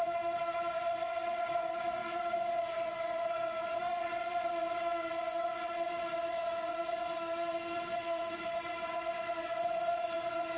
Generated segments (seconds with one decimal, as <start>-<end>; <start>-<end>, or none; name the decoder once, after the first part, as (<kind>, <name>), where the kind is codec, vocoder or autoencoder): 0.0-10.6 (vocoder, Vocos)